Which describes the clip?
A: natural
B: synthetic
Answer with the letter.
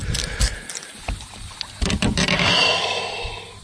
A